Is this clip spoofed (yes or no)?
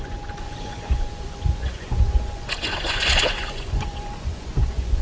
yes